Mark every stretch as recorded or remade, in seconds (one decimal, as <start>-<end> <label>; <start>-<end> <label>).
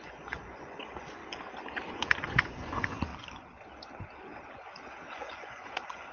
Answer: 0.0-1.2 remade; 1.2-1.9 recorded; 1.9-3.1 remade; 3.1-5.1 recorded; 5.1-6.1 remade